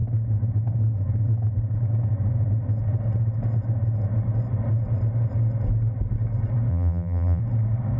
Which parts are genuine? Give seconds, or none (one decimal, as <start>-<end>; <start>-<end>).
0.0-6.7; 7.4-8.0

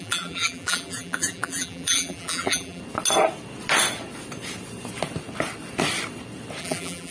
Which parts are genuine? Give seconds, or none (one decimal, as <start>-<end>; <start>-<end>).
2.8-6.6

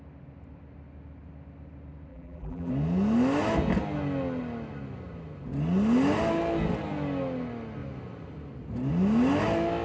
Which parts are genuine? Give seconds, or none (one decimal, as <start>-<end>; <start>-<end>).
0.0-2.1; 2.7-9.8

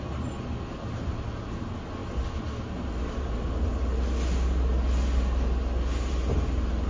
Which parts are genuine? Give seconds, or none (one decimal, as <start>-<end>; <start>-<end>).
0.0-6.9

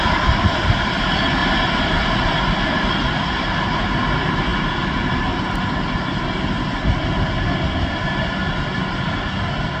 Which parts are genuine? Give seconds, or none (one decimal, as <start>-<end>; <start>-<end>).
1.4-3.0; 4.5-9.4

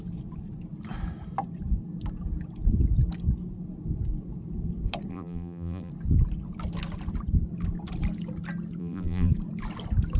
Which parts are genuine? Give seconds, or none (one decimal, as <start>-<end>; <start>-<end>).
0.0-5.1; 5.9-8.8; 9.3-10.2

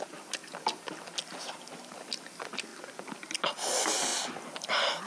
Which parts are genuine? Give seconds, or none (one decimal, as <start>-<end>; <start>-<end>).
0.0-0.4; 0.9-1.3; 2.1-4.1